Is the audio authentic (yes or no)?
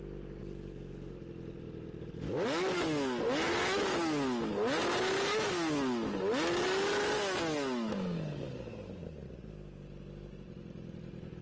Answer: yes